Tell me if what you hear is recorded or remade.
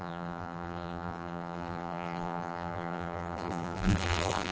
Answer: remade